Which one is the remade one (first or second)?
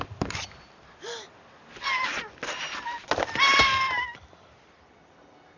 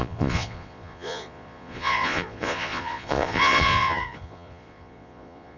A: second